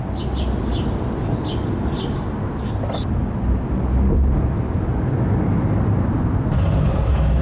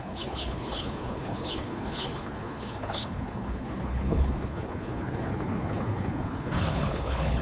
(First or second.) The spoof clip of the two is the second